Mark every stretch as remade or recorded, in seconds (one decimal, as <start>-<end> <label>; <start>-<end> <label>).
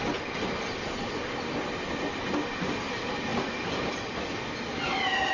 0.0-5.3 recorded